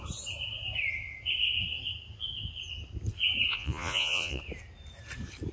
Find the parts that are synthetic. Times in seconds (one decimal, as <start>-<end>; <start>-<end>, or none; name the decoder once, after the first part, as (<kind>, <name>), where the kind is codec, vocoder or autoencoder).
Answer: 3.5-4.4 (vocoder, Vocos)